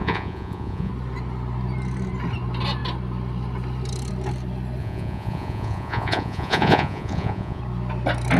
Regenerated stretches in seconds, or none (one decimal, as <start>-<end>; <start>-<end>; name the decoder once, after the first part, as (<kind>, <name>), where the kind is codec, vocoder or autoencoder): 0.0-0.9 (vocoder, Vocos); 4.8-7.6